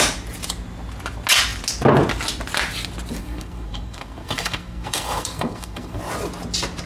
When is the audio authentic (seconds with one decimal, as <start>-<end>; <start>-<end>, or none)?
0.0-3.2; 6.0-6.9